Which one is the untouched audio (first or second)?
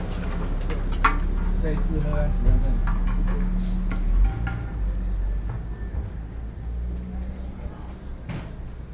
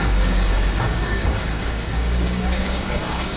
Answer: first